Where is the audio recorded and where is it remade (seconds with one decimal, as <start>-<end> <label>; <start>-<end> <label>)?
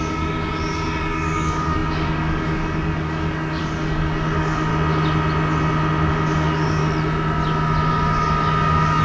0.0-4.7 remade; 4.7-6.1 recorded; 6.1-6.8 remade; 6.8-7.9 recorded; 7.9-9.0 remade